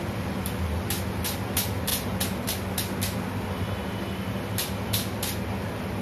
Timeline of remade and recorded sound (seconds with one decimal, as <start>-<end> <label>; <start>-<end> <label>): 0.0-6.0 recorded